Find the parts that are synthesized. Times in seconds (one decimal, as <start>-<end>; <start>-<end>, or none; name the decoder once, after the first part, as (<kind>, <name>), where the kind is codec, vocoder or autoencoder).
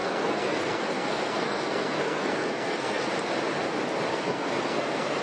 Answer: 0.0-3.1 (codec, SNAC); 4.1-5.2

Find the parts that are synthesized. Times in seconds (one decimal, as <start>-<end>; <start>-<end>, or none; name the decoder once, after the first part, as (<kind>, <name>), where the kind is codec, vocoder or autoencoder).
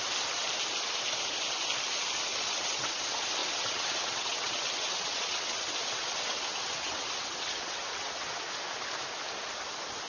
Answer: 2.3-3.0 (vocoder, WaveNeXt); 3.4-8.5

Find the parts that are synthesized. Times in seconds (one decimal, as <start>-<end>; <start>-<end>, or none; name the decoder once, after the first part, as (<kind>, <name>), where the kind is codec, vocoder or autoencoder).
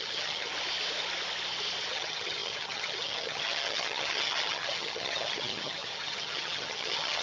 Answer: 0.0-0.5 (vocoder, HiFi-GAN); 1.9-7.2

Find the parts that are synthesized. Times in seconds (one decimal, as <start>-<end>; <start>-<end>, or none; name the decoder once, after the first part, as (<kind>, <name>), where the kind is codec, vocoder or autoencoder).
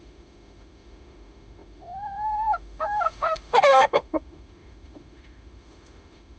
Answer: 0.0-6.4 (autoencoder, DAC-VAE)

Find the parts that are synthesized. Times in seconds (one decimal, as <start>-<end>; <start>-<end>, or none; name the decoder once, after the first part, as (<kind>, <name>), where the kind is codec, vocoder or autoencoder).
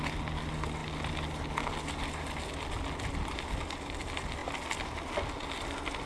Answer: none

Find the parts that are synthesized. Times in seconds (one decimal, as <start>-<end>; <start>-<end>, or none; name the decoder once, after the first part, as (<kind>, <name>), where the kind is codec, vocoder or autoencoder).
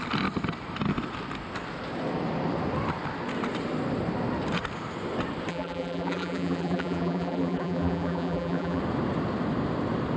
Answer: 5.5-8.8 (vocoder, BigVGAN v2)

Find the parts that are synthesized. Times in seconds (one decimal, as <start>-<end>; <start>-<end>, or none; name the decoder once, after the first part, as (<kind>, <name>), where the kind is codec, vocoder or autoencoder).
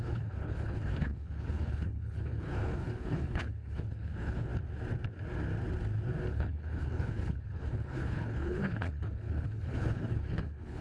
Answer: 0.0-4.5 (codec, HILCodec); 6.3-10.8